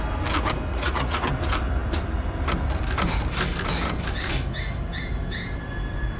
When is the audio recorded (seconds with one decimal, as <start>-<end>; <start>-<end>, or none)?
0.0-0.7; 1.2-6.2